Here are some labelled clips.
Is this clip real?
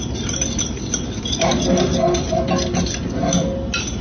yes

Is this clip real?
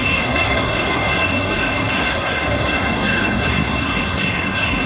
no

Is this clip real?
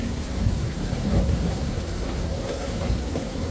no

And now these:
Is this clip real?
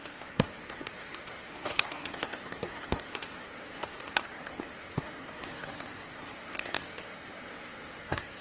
no